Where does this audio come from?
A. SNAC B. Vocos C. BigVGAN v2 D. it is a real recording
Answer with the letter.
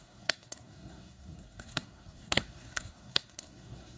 A